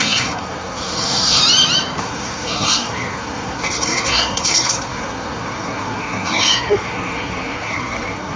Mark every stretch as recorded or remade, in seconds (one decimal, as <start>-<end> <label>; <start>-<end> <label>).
0.0-1.4 remade; 1.4-2.0 recorded; 2.0-8.4 remade